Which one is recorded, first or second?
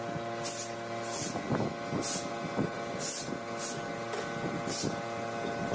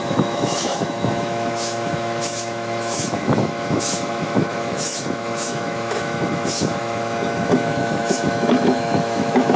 first